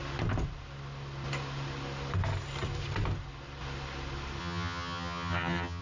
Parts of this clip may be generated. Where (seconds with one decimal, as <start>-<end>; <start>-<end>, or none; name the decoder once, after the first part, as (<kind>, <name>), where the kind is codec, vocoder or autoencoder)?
4.4-5.8 (vocoder, HiFi-GAN)